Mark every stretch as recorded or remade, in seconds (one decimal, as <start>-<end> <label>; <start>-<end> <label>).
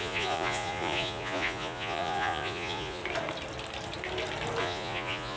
0.0-3.0 remade; 3.0-4.6 recorded; 4.6-5.4 remade